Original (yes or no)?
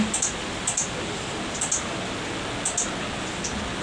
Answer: yes